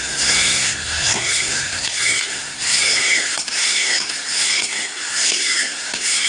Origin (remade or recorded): remade